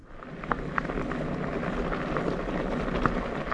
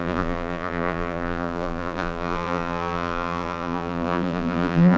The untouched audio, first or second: first